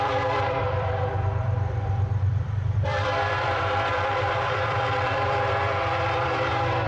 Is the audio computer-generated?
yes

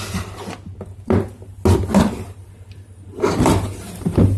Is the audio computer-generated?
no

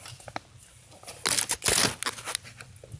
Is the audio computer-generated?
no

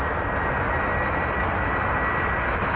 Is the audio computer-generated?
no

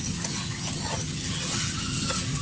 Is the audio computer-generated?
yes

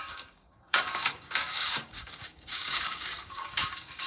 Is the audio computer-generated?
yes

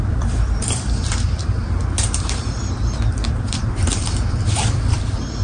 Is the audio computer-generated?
yes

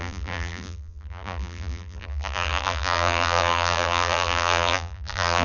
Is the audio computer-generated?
yes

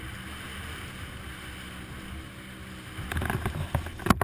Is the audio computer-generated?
no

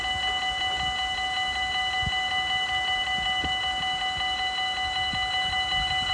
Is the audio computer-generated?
no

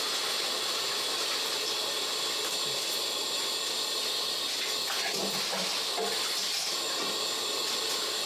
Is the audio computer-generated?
no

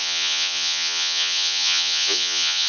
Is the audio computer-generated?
yes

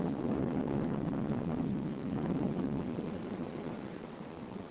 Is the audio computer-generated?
yes